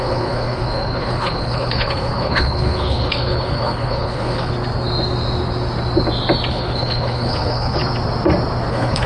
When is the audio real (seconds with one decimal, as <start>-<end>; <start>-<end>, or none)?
4.5-6.5; 7.8-8.7